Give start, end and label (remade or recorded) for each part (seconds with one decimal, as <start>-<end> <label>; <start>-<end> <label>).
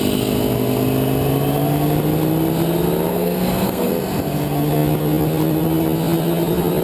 0.0-3.1 recorded; 3.1-3.9 remade; 3.9-6.8 recorded